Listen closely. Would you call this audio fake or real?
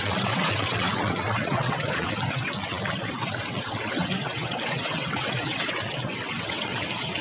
fake